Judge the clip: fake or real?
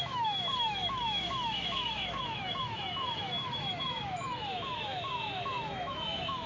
fake